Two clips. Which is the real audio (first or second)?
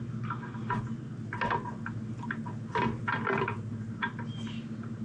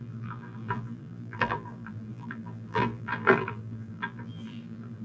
first